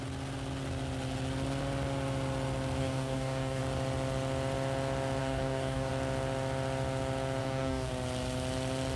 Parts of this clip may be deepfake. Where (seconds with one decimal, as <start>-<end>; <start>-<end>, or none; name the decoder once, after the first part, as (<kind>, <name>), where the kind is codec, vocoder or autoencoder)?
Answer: 2.8-3.6 (codec, DAC); 5.2-5.9; 7.4-7.9

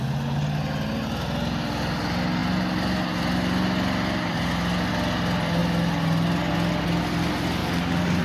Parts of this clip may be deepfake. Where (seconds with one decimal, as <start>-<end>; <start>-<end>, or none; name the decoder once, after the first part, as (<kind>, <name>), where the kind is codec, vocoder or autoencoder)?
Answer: 7.6-8.2 (codec, DAC)

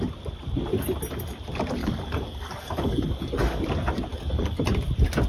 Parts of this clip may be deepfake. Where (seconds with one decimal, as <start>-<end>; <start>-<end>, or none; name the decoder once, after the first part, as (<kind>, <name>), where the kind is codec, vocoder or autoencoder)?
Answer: 1.8-3.6 (codec, DAC); 4.1-4.6